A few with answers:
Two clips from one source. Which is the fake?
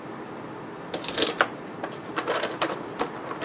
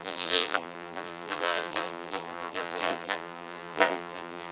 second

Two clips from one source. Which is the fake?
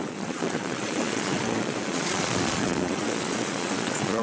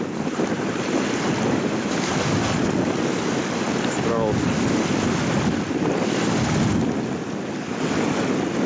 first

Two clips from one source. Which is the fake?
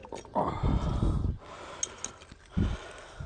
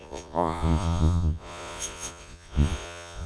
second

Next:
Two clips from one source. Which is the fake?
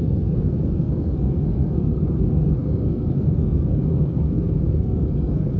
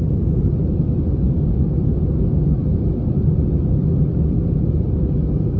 first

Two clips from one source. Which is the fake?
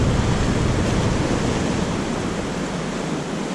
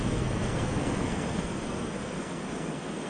second